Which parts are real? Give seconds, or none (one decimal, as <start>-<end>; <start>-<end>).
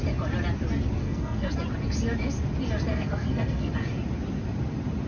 0.0-1.0; 1.5-2.9; 3.7-5.1